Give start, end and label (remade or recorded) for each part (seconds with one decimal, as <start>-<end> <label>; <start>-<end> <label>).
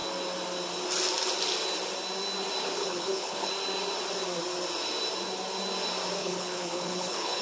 0.0-2.8 recorded; 2.8-3.5 remade; 3.5-6.2 recorded; 6.2-7.4 remade